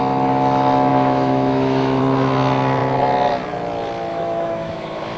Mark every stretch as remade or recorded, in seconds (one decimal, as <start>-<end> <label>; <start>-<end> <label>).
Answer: 0.0-0.9 recorded; 0.9-2.0 remade; 2.0-4.1 recorded; 4.1-5.2 remade